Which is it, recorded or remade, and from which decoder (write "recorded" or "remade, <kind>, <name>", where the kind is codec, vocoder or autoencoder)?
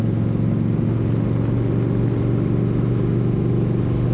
recorded